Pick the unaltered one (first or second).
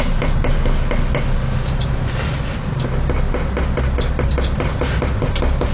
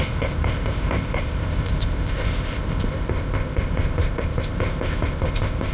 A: first